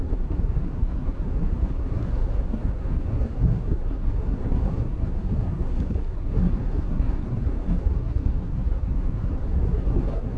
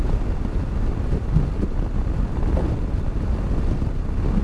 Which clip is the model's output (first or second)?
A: first